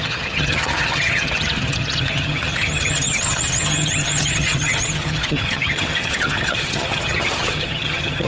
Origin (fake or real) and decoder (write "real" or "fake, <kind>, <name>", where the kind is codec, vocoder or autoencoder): fake, vocoder, HiFi-GAN